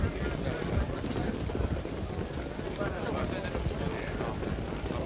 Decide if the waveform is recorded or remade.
recorded